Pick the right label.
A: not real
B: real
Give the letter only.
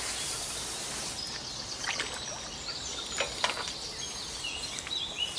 B